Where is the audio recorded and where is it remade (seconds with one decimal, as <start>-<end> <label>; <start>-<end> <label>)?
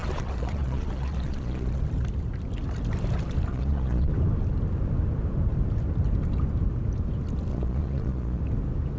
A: 0.0-1.8 remade; 1.8-3.5 recorded; 3.5-4.1 remade; 4.1-7.5 recorded; 7.5-8.4 remade; 8.4-9.0 recorded